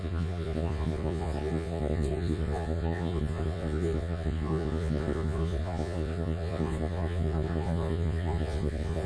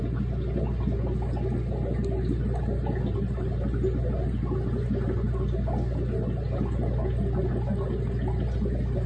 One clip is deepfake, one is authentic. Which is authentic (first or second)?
second